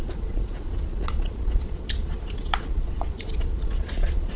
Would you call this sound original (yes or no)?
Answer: no